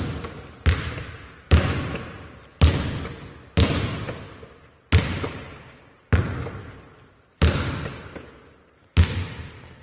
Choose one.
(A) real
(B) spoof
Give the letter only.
A